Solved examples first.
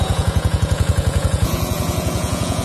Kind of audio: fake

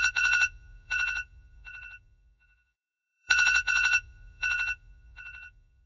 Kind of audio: fake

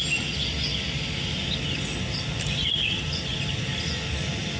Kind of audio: real